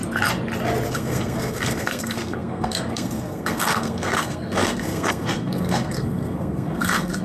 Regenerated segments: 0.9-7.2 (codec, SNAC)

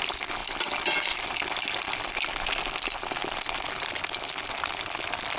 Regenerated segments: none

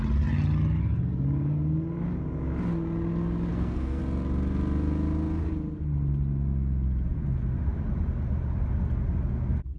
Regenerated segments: 3.5-4.0 (codec, SNAC)

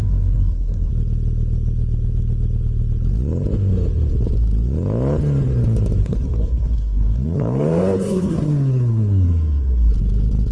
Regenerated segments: 0.0-0.9 (codec, SNAC); 6.0-9.9

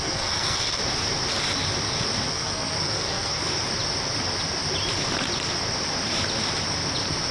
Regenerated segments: 0.0-0.8 (codec, SNAC); 2.3-3.3

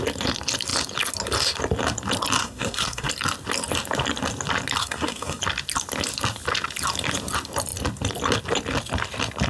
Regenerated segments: 2.4-3.1 (codec, SNAC); 4.8-5.4

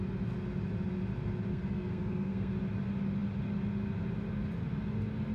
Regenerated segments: 1.5-2.5 (codec, SNAC)

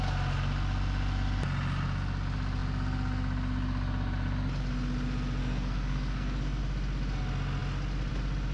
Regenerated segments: 5.4-6.6 (codec, SNAC)